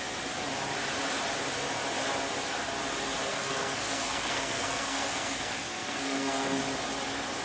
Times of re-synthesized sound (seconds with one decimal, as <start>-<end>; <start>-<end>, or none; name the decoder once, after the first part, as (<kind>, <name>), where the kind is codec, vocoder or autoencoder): 3.3-6.6 (codec, SNAC)